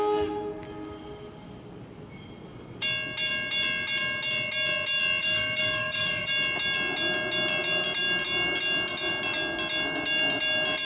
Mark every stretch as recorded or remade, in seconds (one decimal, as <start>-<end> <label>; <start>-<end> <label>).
0.0-5.2 recorded; 5.2-6.3 remade; 6.3-10.8 recorded